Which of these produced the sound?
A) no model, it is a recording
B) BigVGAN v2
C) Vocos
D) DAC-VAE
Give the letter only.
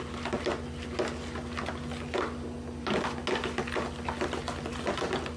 A